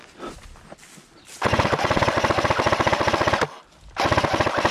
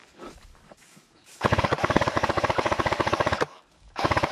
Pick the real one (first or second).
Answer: first